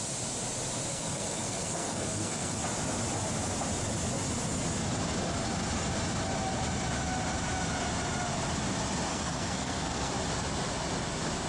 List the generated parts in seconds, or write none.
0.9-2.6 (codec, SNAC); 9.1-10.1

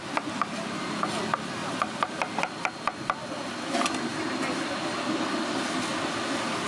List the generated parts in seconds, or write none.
none

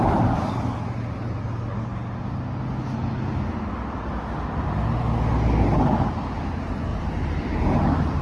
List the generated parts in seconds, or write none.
6.9-7.5 (vocoder, BigVGAN v2)

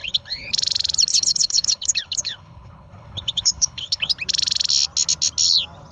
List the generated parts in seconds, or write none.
0.0-0.5 (codec, HILCodec); 1.1-4.1

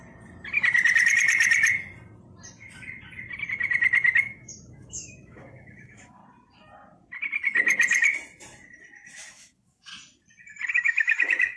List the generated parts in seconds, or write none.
4.2-6.2 (autoencoder, DAC-VAE); 9.3-9.9; 10.7-11.6

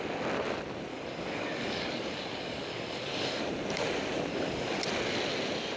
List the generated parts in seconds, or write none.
0.9-3.4 (codec, DAC); 4.3-4.8

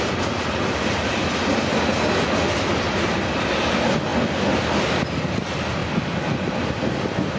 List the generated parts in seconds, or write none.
1.2-3.5 (vocoder, BigVGAN v2); 5.8-6.7